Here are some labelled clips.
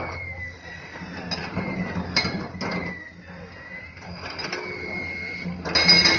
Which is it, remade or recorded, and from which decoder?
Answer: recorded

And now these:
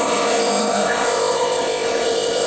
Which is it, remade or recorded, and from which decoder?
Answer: remade, codec, ZipCodec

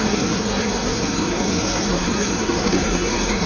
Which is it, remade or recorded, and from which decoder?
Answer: remade, codec, SNAC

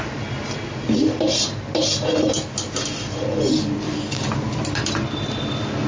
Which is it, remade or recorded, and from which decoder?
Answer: recorded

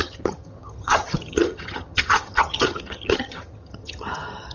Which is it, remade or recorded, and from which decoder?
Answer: remade, vocoder, HiFi-GAN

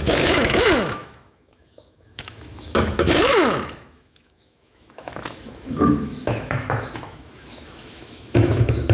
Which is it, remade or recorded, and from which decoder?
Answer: remade, autoencoder, DAC-VAE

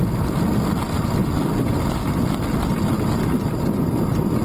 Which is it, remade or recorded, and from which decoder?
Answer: recorded